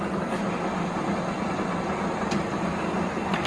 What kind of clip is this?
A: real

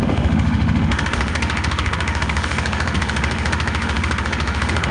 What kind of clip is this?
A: fake